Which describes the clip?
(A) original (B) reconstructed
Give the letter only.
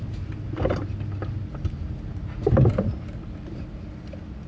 A